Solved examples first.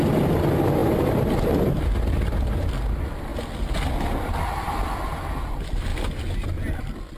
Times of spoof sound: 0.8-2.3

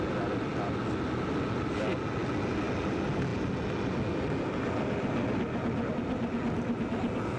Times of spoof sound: none

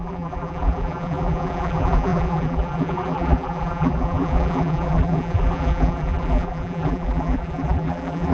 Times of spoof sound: 0.0-8.3

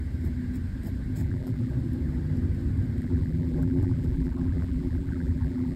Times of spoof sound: 1.2-1.7; 3.0-5.8

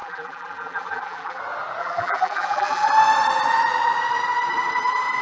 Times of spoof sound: 0.0-1.4; 1.8-2.9